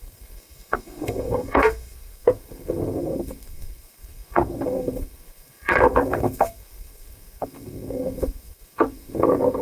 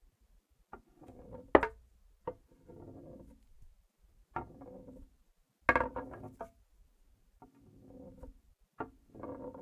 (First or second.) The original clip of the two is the second